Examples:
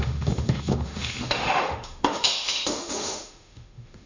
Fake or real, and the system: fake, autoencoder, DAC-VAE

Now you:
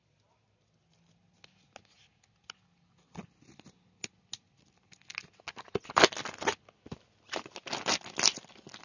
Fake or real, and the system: real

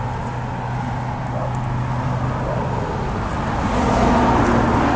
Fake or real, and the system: real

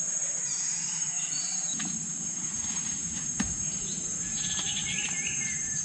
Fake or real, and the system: fake, vocoder, BigVGAN v2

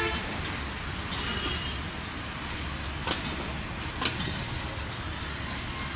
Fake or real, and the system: real